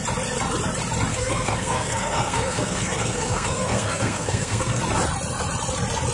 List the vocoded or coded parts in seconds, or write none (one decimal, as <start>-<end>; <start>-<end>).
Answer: 1.1-4.8